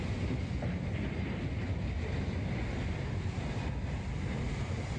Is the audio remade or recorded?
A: recorded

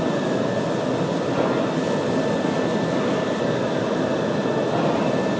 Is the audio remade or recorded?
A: recorded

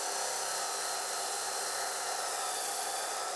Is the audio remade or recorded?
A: recorded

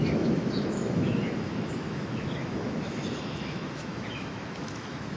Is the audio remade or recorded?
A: remade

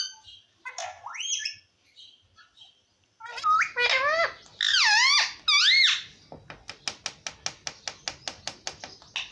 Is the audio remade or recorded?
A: recorded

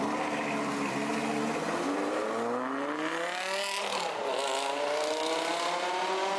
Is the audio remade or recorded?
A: recorded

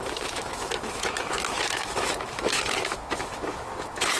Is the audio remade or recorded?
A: remade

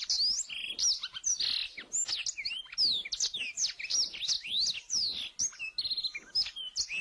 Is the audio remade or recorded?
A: recorded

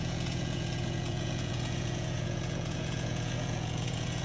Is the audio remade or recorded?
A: remade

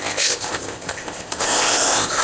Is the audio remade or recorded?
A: remade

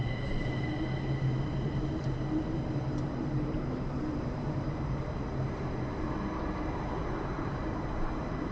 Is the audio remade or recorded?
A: remade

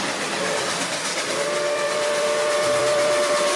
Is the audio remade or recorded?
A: remade